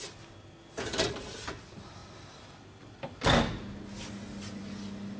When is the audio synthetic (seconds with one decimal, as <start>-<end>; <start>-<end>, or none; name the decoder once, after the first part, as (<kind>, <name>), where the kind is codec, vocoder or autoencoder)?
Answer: none

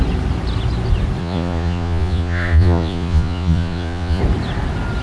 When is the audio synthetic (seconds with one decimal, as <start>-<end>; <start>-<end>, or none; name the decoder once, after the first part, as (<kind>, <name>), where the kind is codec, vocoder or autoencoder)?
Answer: 1.2-4.2 (vocoder, Vocos)

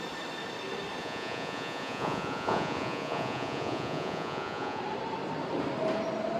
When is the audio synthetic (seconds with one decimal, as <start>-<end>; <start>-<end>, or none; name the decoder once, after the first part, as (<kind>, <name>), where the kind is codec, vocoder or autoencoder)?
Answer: 1.0-4.8 (vocoder, Vocos)

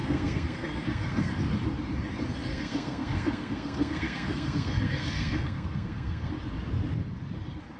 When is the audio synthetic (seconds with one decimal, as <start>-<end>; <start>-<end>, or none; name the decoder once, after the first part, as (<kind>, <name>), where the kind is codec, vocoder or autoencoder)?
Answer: 0.0-1.3 (codec, SNAC); 2.5-6.3

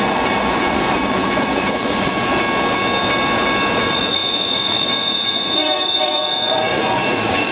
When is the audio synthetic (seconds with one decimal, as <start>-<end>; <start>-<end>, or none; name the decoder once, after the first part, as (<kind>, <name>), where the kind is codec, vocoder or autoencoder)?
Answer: 0.0-2.3 (vocoder, Vocos); 3.7-7.5

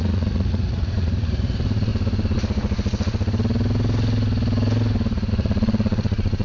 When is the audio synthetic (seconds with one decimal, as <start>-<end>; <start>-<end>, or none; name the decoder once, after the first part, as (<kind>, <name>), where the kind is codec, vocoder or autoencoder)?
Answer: 0.0-1.9 (vocoder, Vocos); 5.3-6.4